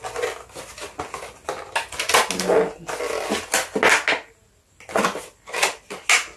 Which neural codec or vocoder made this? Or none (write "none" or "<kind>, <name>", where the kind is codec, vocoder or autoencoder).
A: none